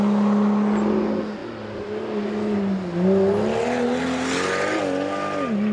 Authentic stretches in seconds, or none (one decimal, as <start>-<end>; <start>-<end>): 0.0-5.7